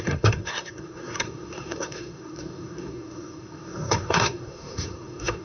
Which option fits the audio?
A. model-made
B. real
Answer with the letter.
A